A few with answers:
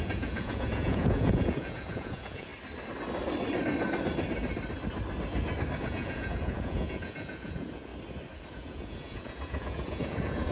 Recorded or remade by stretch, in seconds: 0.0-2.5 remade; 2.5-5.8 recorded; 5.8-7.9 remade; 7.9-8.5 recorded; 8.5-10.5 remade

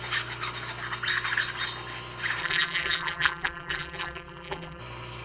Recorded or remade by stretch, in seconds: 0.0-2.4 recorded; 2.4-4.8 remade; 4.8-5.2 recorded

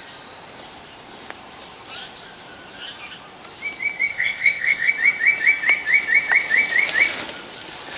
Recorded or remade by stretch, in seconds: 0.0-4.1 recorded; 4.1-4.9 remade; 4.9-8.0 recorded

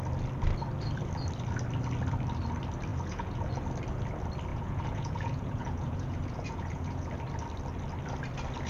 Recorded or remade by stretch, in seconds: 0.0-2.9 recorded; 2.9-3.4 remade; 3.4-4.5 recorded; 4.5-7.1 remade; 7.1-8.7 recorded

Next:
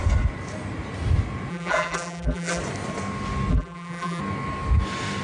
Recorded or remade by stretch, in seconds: 0.0-1.5 recorded; 1.5-2.6 remade; 2.6-3.5 recorded; 3.5-4.2 remade; 4.2-5.2 recorded

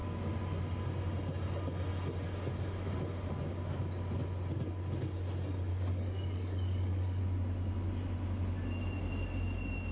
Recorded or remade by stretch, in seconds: 0.0-5.7 recorded; 5.7-7.2 remade; 7.2-9.9 recorded

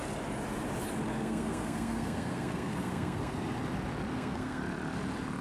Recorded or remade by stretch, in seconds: 0.0-1.1 recorded; 1.1-3.3 remade; 3.3-4.1 recorded; 4.1-4.6 remade; 4.6-5.4 recorded

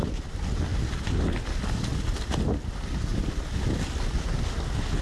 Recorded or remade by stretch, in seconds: 0.0-1.9 recorded; 1.9-2.6 remade; 2.6-3.1 recorded; 3.1-4.4 remade; 4.4-5.0 recorded